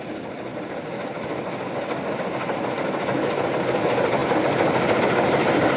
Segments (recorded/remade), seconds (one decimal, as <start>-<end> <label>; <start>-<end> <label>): 0.0-5.8 recorded